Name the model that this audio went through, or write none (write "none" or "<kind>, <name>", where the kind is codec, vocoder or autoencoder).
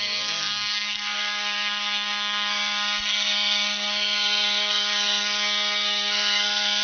codec, SNAC